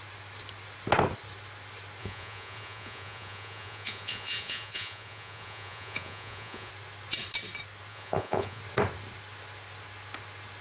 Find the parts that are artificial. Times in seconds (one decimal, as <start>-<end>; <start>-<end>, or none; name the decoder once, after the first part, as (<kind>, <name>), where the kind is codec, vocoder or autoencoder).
2.0-6.7 (vocoder, Vocos); 7.9-8.6